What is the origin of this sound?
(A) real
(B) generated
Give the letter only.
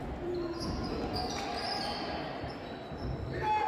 A